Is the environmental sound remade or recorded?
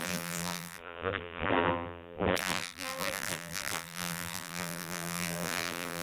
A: remade